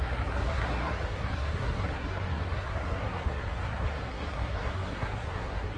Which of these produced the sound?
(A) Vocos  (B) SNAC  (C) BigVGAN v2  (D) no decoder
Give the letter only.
B